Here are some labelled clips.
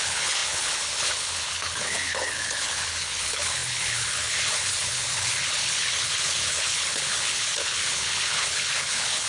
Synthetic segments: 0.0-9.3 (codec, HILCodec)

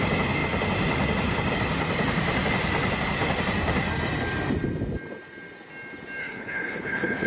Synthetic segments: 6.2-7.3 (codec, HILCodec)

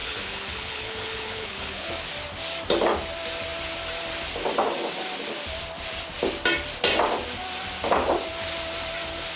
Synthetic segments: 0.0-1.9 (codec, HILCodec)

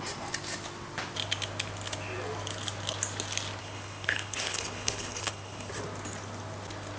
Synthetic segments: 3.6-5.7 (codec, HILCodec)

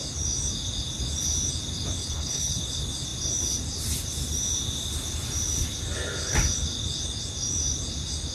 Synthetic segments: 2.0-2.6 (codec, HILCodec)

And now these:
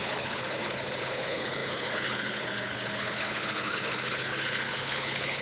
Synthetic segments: 0.0-5.4 (codec, HILCodec)